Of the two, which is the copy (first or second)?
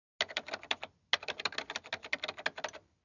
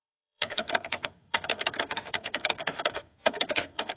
second